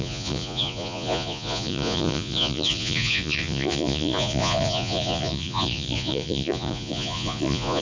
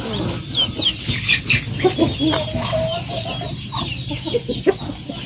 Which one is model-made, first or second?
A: first